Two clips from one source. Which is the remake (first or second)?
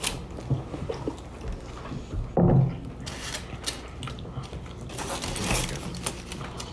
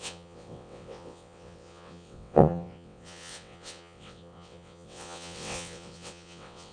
second